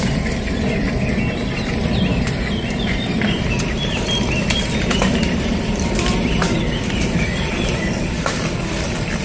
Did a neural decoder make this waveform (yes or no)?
yes